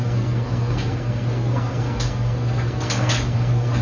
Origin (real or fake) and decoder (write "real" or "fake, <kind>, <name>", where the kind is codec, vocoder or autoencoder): fake, codec, SNAC